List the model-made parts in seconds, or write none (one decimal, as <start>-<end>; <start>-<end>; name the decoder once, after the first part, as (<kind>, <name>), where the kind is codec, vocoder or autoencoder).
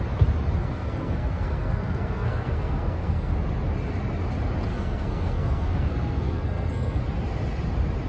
0.6-3.3 (codec, SNAC); 4.7-7.0